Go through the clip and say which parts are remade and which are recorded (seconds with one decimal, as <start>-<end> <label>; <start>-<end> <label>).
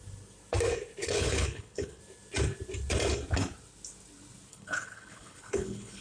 0.0-1.0 recorded; 1.0-2.0 remade; 2.0-4.5 recorded; 4.5-6.0 remade